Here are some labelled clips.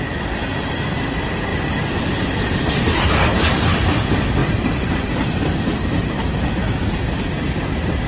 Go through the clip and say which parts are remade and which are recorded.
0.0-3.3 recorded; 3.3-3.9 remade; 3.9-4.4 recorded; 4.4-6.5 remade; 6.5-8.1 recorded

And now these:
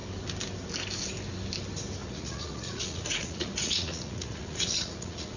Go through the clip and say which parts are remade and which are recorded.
0.0-2.0 recorded; 2.0-5.4 remade

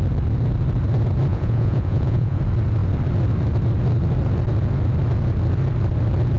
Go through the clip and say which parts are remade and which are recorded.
0.0-1.3 recorded; 1.3-2.4 remade; 2.4-6.4 recorded

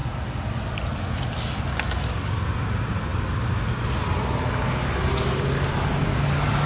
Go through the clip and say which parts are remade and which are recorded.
0.0-6.7 recorded

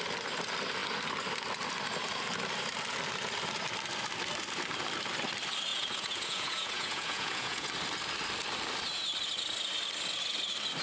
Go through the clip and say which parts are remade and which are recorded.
0.0-5.7 recorded; 5.7-7.7 remade; 7.7-10.8 recorded

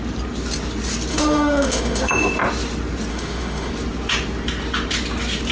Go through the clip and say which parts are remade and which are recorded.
0.0-1.1 recorded; 1.1-2.1 remade; 2.1-3.1 recorded; 3.1-3.7 remade; 3.7-5.5 recorded

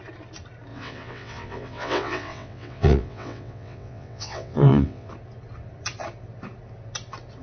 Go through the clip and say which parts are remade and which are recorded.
0.0-0.7 recorded; 0.7-5.1 remade; 5.1-7.4 recorded